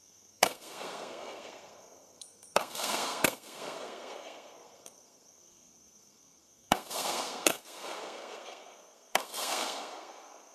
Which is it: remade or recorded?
remade